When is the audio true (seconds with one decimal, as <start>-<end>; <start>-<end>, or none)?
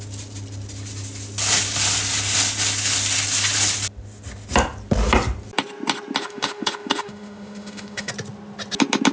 0.0-6.2; 8.1-9.1